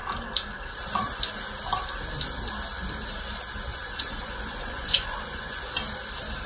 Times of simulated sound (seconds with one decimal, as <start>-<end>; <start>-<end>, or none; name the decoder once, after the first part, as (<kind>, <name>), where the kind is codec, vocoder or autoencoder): 3.7-5.6 (vocoder, Vocos)